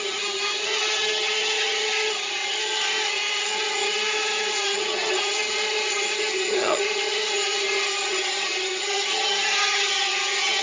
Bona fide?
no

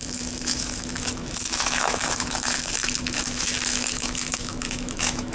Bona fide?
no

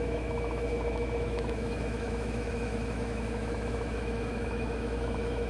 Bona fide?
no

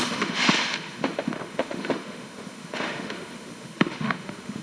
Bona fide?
no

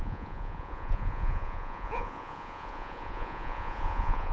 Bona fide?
no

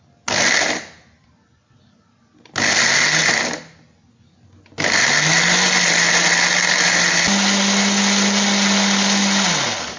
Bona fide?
yes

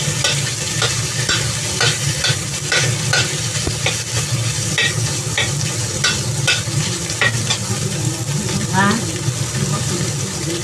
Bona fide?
yes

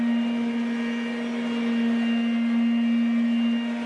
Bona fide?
yes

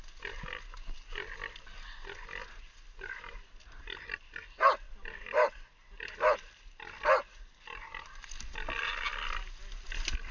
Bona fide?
yes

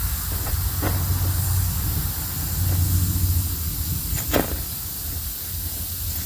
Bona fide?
yes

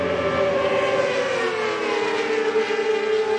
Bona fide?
yes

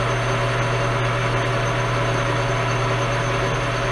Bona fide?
yes